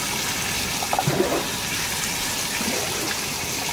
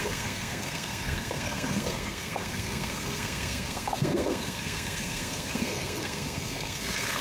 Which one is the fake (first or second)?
second